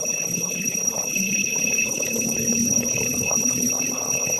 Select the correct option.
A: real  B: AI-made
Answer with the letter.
B